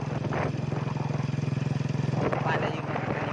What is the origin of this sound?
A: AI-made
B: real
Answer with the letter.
B